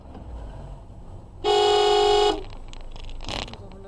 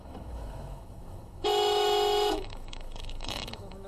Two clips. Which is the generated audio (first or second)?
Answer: second